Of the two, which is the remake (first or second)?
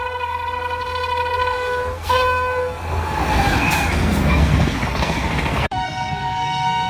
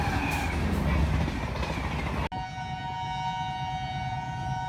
first